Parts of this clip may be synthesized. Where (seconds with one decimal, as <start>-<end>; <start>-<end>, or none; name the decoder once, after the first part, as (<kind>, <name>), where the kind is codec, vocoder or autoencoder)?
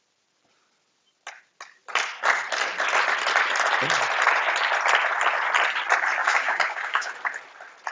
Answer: 6.2-7.1 (codec, DAC)